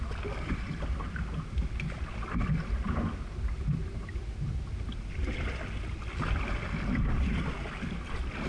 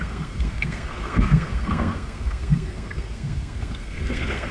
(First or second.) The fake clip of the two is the second